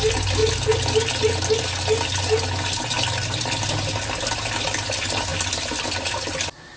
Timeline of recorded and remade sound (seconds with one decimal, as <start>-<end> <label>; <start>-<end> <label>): 0.0-6.8 recorded